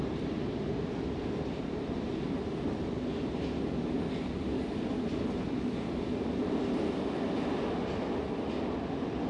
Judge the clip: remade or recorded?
recorded